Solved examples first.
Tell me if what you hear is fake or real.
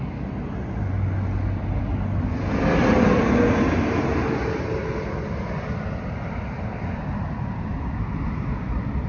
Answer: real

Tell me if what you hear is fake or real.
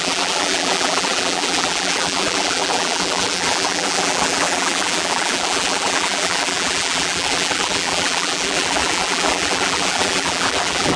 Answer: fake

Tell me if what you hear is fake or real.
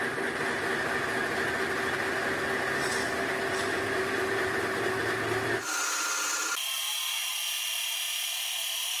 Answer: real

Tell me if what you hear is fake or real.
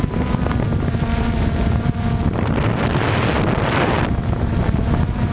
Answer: real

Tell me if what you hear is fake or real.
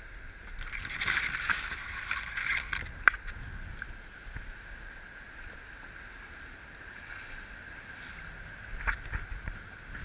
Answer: real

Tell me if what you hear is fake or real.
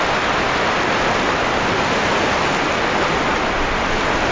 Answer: real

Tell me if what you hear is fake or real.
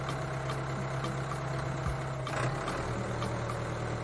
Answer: real